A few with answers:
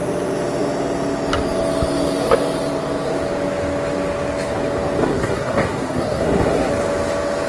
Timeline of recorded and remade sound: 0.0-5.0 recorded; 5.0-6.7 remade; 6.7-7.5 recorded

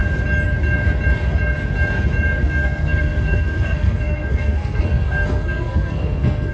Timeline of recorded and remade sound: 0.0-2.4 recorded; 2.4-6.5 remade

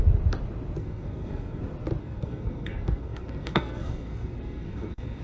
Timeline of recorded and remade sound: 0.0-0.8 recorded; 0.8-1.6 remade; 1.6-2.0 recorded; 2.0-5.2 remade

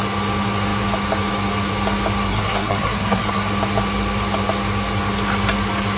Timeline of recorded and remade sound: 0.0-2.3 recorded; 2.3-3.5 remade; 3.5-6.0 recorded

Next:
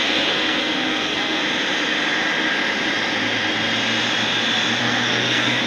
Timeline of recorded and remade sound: 0.0-1.4 remade; 1.4-4.8 recorded; 4.8-5.7 remade

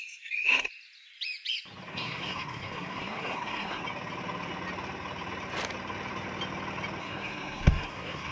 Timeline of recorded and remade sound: 0.0-0.7 remade; 0.7-1.9 recorded; 1.9-3.8 remade; 3.8-7.0 recorded; 7.0-8.3 remade

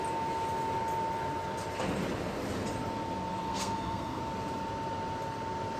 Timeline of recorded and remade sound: 0.0-3.5 recorded; 3.5-4.2 remade; 4.2-5.8 recorded